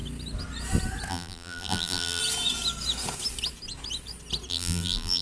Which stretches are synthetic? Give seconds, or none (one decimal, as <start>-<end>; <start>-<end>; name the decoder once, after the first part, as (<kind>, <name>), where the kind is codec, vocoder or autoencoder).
1.1-2.2 (vocoder, BigVGAN v2); 4.5-5.2